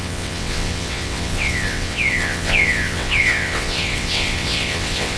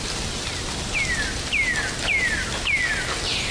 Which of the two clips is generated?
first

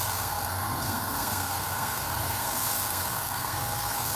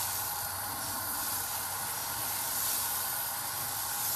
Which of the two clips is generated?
first